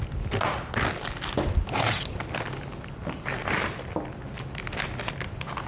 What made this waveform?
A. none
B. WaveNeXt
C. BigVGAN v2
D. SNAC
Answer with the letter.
A